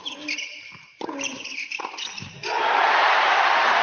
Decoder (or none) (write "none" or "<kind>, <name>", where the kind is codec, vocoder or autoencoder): none